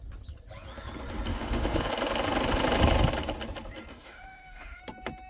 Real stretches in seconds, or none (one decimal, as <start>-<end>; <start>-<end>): 0.0-1.3; 1.9-3.9; 4.8-5.3